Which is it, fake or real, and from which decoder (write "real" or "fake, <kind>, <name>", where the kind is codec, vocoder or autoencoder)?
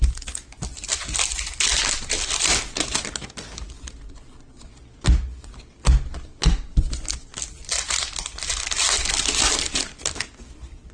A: real